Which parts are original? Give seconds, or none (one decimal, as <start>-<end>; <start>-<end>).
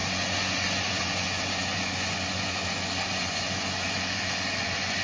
none